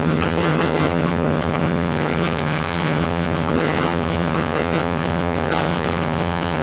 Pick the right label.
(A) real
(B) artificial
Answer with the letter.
B